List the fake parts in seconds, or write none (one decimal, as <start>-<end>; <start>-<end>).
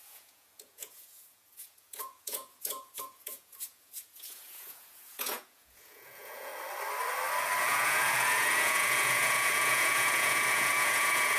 0.0-6.5; 7.6-11.4